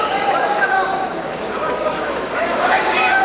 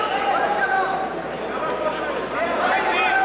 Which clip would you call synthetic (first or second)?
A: first